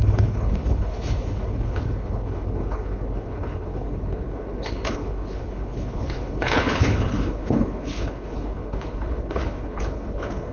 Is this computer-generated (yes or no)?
yes